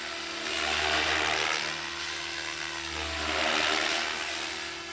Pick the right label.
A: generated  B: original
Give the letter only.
B